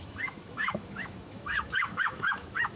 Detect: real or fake fake